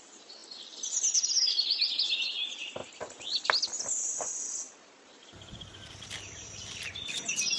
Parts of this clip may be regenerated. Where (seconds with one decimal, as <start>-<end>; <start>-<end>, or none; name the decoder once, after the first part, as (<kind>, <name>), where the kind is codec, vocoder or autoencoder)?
none